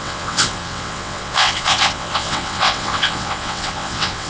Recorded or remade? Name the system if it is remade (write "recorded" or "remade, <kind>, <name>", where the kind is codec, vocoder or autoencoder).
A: remade, vocoder, WaveNeXt